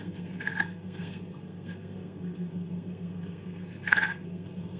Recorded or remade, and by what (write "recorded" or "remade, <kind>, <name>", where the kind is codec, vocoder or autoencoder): remade, codec, SNAC